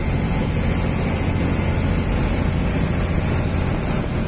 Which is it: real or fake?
real